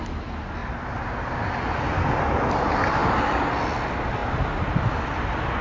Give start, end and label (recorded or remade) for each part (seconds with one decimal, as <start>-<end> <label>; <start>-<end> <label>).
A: 0.0-3.0 recorded; 3.0-3.5 remade; 3.5-4.2 recorded; 4.2-4.9 remade; 4.9-5.6 recorded